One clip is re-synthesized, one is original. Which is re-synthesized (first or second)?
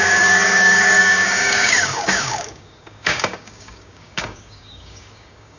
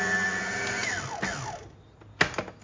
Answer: first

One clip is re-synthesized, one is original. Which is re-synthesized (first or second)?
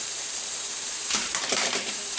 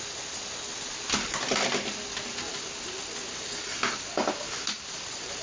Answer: first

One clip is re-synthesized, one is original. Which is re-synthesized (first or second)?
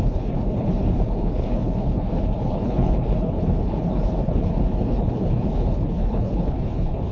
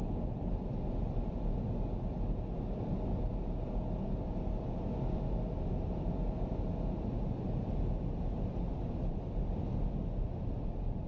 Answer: first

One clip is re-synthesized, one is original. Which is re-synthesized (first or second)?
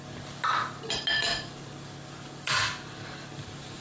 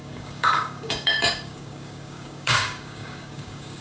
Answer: second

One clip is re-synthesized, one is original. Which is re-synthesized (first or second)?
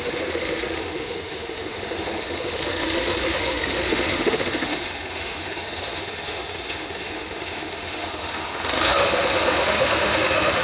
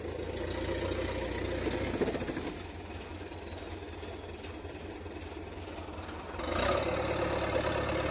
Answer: first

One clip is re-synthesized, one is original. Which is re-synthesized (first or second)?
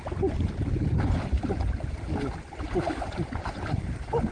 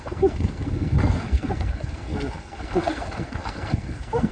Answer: second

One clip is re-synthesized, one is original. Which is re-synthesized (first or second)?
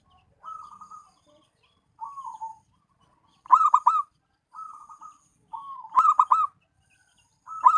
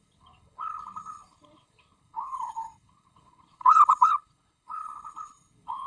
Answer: second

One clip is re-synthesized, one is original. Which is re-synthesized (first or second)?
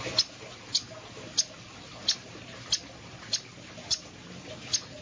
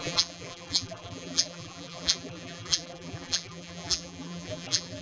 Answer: second